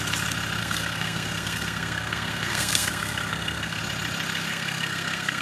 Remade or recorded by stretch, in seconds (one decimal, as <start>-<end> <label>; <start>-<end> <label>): 0.0-0.6 recorded; 0.6-3.8 remade; 3.8-4.5 recorded; 4.5-5.4 remade